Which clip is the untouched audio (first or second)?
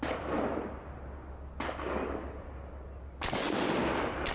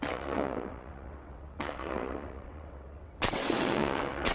first